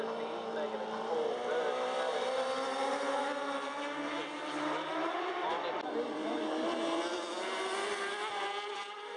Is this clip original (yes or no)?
yes